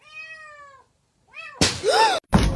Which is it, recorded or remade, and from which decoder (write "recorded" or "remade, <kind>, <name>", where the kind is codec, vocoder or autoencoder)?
recorded